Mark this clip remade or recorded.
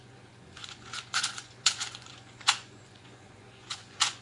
remade